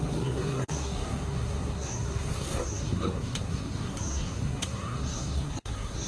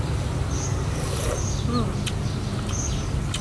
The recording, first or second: second